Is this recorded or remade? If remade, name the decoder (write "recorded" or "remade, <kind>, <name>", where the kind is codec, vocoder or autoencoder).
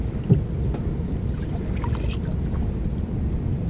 recorded